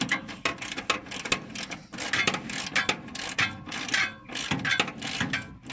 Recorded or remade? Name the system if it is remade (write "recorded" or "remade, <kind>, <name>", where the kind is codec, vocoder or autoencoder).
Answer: recorded